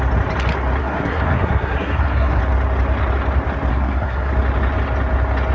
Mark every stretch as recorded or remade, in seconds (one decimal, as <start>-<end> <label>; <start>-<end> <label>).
0.0-0.8 recorded; 0.8-2.4 remade; 2.4-3.7 recorded; 3.7-4.3 remade; 4.3-5.5 recorded